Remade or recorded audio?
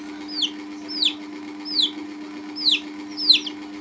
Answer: recorded